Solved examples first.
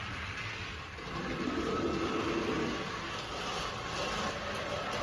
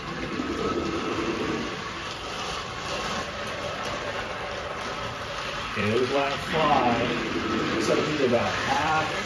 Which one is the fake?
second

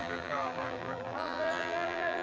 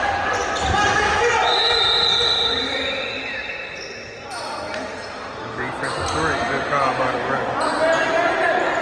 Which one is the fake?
first